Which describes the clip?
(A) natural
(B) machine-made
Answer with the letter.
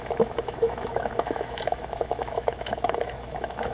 B